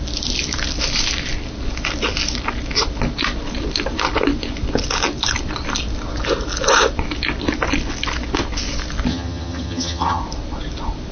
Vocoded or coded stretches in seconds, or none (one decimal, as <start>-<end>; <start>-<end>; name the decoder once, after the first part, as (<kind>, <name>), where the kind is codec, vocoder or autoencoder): 9.1-10.2 (vocoder, HiFi-GAN)